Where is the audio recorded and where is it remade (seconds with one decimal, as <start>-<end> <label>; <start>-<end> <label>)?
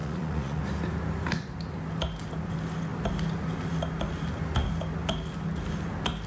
0.0-0.6 remade; 0.6-6.3 recorded